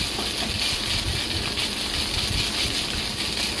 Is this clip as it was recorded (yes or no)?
yes